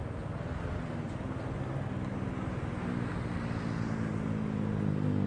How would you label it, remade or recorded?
recorded